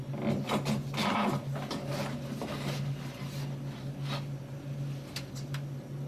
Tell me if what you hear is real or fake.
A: real